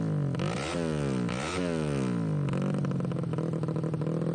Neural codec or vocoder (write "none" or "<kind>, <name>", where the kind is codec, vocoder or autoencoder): none